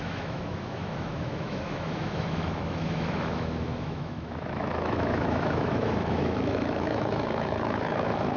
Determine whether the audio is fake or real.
fake